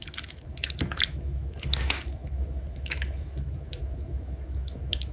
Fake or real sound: fake